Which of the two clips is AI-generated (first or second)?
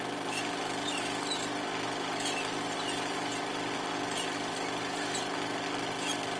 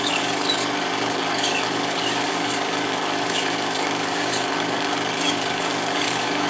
second